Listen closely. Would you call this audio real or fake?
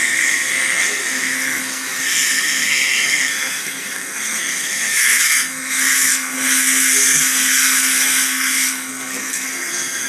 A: fake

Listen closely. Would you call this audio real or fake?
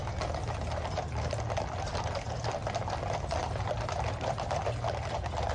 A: real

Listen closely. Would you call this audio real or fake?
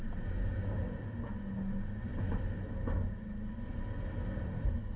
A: real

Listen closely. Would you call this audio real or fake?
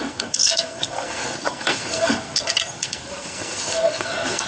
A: fake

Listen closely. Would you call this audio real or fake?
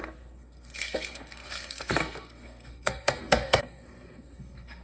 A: fake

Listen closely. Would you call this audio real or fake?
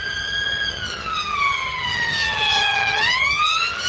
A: fake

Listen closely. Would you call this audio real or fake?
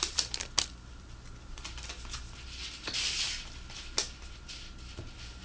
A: real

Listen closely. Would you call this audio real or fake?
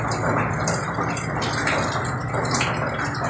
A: real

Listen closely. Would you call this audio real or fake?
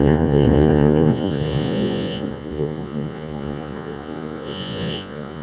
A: fake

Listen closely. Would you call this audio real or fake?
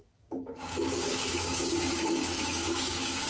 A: fake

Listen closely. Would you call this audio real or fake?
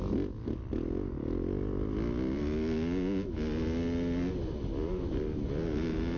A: real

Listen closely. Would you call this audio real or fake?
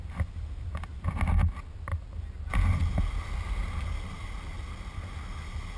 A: real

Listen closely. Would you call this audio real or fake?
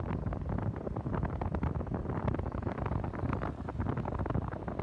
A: real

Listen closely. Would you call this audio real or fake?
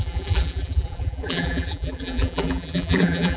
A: fake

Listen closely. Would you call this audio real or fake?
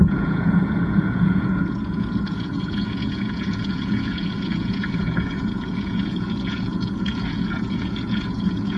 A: fake